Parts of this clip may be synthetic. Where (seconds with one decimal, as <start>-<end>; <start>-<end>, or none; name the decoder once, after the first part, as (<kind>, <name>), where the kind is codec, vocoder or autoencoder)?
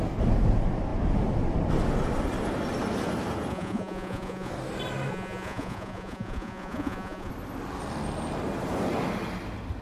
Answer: 3.5-4.5 (vocoder, Vocos); 5.1-7.3